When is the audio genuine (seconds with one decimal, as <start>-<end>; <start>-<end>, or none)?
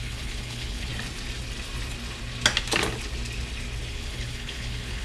0.9-3.9